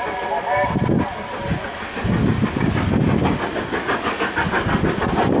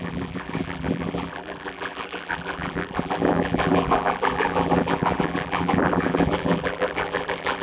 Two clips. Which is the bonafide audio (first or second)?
first